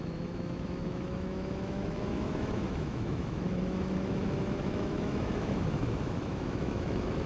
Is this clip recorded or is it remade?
remade